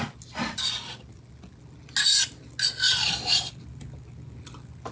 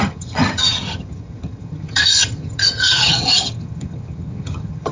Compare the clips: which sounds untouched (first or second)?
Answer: first